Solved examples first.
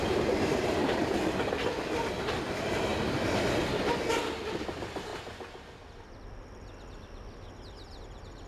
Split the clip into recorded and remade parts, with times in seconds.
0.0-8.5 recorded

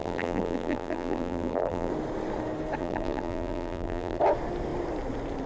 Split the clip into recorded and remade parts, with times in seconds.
0.0-1.9 remade; 1.9-2.8 recorded; 2.8-4.2 remade; 4.2-5.5 recorded

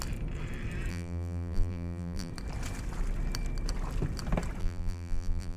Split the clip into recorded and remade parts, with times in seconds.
0.0-0.9 recorded; 0.9-2.3 remade; 2.3-4.6 recorded; 4.6-5.6 remade

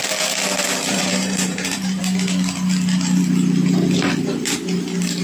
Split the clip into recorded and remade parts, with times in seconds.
0.0-0.9 recorded; 0.9-2.0 remade; 2.0-5.2 recorded